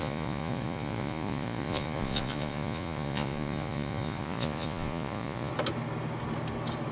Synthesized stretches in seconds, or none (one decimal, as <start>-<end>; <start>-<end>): 0.0-5.5

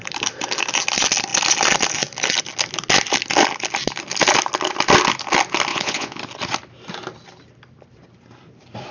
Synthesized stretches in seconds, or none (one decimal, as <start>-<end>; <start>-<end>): 5.7-6.2